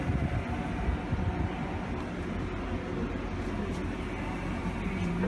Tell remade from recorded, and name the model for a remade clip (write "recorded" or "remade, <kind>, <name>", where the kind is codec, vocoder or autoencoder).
recorded